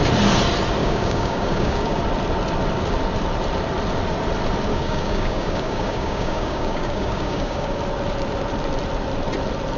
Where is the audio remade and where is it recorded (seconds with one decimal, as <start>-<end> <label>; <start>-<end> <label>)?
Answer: 0.0-0.8 recorded; 0.8-2.0 remade; 2.0-4.7 recorded; 4.7-7.8 remade; 7.8-9.8 recorded